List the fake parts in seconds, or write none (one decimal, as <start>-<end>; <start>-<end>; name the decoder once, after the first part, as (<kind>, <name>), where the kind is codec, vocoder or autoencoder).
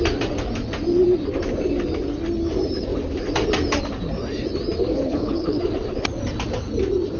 4.9-5.6 (codec, HILCodec)